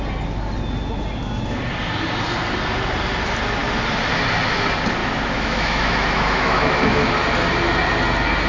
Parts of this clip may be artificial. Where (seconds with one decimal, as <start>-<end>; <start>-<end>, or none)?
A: 5.0-7.1